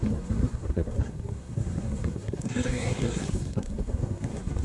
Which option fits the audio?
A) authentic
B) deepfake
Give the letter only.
B